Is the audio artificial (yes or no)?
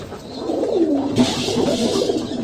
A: yes